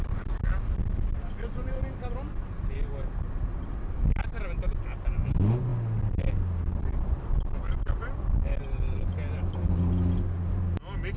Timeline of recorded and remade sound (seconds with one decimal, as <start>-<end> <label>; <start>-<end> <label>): 0.0-11.2 recorded